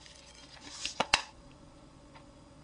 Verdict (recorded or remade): remade